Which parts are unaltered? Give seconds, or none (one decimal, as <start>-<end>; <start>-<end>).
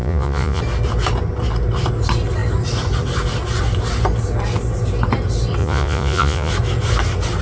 0.6-5.6; 6.5-7.4